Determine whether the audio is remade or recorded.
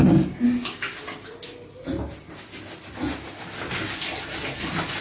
recorded